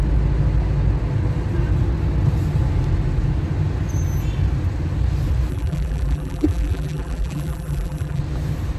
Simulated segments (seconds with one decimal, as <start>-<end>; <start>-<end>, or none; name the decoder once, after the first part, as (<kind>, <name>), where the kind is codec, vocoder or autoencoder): 5.5-8.2 (vocoder, BigVGAN v2)